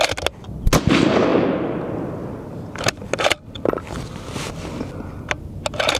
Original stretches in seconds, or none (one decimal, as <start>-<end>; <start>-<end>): 0.0-6.0